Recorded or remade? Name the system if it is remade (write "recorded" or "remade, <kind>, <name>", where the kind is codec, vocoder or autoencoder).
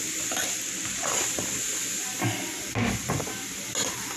recorded